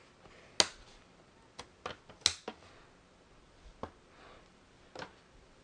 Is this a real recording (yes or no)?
yes